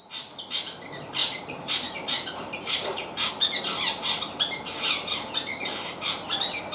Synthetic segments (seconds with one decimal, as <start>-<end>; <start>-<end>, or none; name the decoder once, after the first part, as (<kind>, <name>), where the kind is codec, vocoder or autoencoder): 1.2-3.3 (vocoder, BigVGAN v2)